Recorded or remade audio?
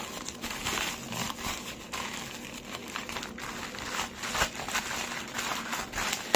recorded